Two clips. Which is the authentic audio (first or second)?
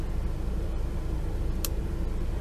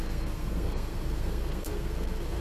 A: first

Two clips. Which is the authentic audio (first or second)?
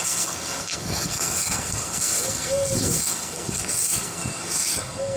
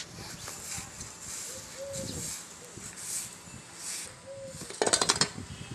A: second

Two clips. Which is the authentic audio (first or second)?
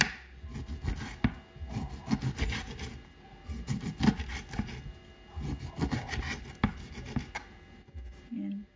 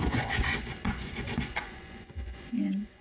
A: first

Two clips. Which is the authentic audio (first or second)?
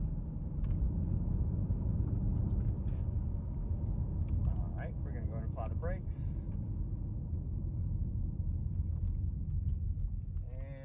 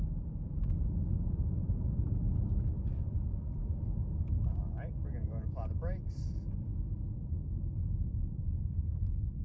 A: first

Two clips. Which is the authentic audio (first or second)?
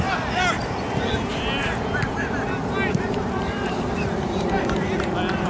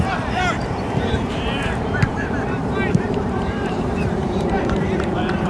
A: first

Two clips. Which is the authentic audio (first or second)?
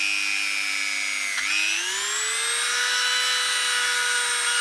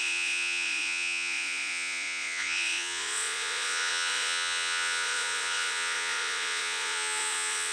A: first